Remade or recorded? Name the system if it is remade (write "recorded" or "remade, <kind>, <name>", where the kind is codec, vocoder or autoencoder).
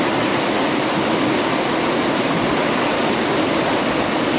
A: recorded